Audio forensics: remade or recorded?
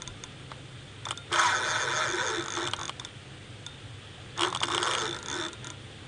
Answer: recorded